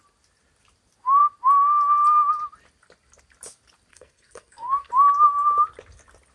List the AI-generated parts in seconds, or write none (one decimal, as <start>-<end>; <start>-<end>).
3.9-4.9